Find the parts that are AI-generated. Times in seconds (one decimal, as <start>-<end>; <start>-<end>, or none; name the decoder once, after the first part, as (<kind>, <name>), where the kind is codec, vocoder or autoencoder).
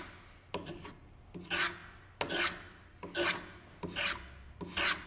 none